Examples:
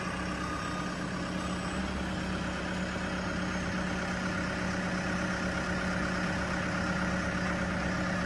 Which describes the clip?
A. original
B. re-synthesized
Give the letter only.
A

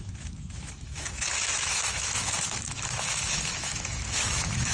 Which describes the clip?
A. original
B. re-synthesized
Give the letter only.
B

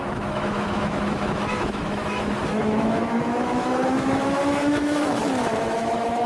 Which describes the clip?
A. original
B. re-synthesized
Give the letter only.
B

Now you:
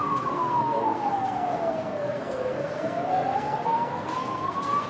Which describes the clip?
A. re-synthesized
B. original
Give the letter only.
A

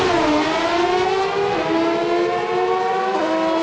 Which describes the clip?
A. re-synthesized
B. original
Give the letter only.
B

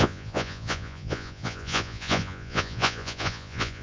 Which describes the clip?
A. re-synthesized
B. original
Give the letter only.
A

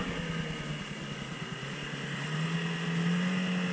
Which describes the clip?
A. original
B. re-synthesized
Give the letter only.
A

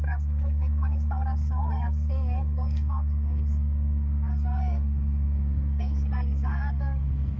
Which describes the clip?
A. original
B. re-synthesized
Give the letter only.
B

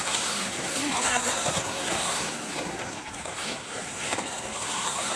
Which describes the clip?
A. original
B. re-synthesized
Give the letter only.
B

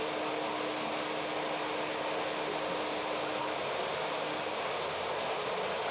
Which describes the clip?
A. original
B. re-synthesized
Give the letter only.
A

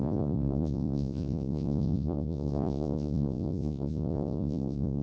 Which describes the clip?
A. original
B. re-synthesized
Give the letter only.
B